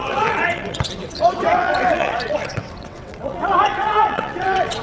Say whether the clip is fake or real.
fake